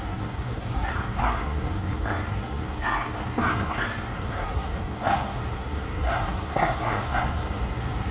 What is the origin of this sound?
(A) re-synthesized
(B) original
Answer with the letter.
A